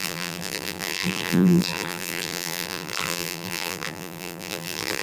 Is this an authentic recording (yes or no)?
no